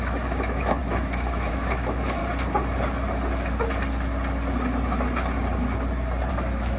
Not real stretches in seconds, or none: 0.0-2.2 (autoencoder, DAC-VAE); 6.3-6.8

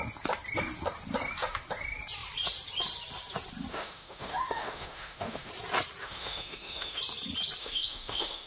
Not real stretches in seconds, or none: 3.7-5.5 (autoencoder, DAC-VAE); 6.0-7.0; 7.6-8.5

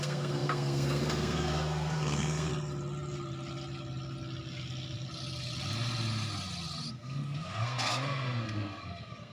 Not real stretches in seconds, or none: 0.0-2.5 (codec, SNAC); 6.9-9.3

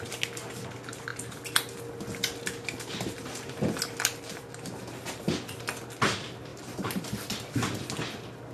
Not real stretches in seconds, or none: 6.5-7.3 (vocoder, BigVGAN v2)

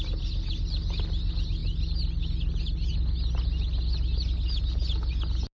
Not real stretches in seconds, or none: none